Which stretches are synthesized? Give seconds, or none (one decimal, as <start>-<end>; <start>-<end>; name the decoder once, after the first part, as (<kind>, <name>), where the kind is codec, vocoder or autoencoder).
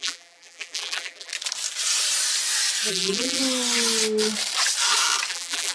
0.0-1.3 (vocoder, BigVGAN v2); 2.9-3.4; 5.3-5.7